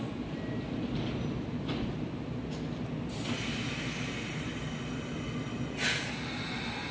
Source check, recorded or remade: recorded